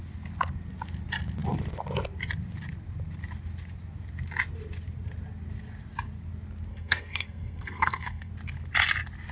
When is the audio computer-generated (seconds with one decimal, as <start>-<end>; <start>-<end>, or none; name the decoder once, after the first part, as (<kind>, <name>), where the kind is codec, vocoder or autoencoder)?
6.7-8.3 (codec, SNAC)